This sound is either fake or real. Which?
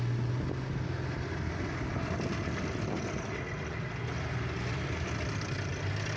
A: real